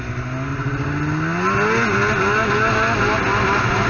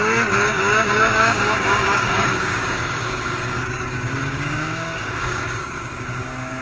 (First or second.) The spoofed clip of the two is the second